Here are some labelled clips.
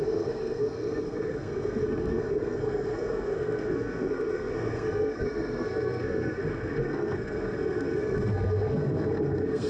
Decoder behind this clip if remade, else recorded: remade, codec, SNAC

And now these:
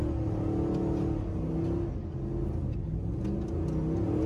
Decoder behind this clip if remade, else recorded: recorded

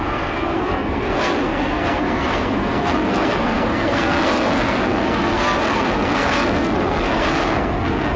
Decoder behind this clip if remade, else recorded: remade, codec, SNAC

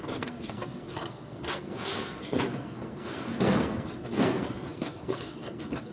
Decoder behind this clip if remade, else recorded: remade, codec, SNAC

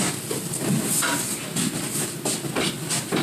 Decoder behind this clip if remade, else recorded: recorded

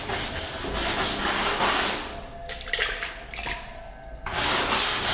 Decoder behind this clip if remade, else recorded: recorded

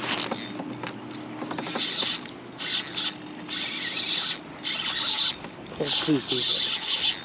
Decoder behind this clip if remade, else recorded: recorded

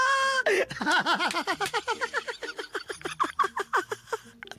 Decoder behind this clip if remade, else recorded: recorded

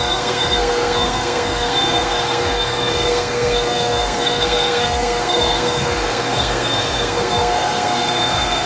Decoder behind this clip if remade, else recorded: remade, codec, SNAC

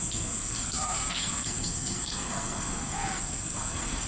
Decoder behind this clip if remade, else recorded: remade, codec, SNAC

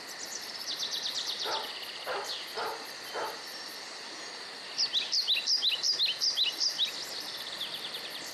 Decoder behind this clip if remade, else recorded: recorded